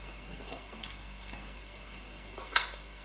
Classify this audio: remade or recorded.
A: remade